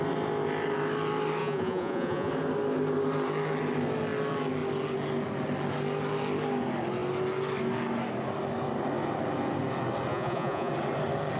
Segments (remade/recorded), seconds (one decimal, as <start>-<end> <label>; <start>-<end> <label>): 0.0-1.4 recorded; 1.4-2.3 remade; 2.3-10.1 recorded; 10.1-10.7 remade; 10.7-11.4 recorded